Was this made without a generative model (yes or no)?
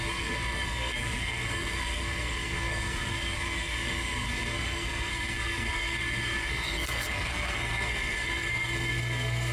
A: no